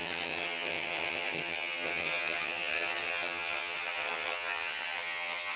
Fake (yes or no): yes